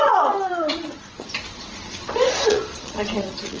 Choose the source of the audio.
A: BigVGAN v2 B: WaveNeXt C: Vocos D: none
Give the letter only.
C